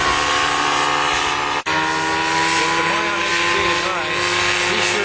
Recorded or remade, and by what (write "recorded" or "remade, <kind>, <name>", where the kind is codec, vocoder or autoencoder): recorded